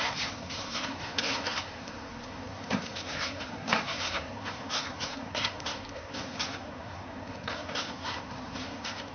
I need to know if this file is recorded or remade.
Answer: remade